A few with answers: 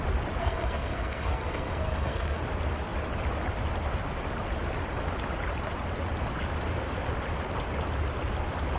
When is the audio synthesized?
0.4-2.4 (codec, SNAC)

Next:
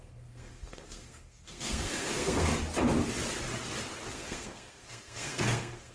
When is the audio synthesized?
0.0-2.5 (codec, SNAC); 4.1-5.9

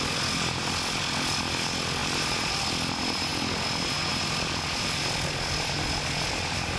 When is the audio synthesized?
2.0-2.6 (vocoder, BigVGAN v2)

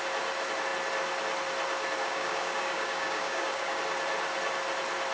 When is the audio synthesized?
2.0-3.8 (codec, DAC)

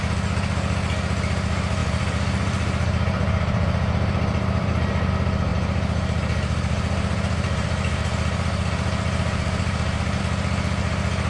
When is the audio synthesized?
1.8-5.1 (vocoder, BigVGAN v2); 5.5-10.2

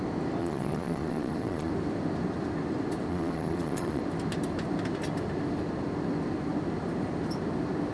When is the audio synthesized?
0.4-1.7 (vocoder, Vocos); 3.1-4.0

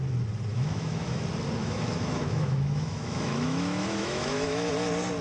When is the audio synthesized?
0.5-1.2 (autoencoder, DAC-VAE); 1.6-4.7